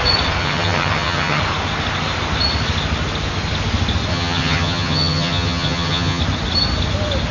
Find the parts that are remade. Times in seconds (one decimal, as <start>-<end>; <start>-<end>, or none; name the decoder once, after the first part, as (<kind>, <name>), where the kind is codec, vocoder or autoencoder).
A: 0.4-1.4 (vocoder, HiFi-GAN); 4.1-6.2